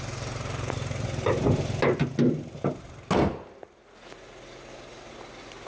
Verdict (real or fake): real